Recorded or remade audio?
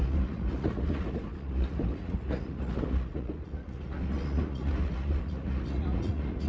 remade